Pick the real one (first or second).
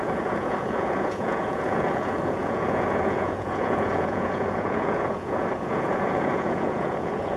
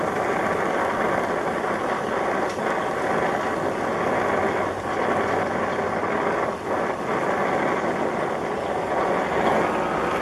second